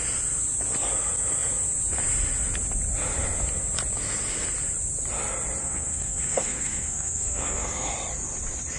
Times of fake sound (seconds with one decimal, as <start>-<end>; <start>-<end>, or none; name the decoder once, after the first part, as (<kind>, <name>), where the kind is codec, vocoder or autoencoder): 5.6-7.9 (codec, SNAC)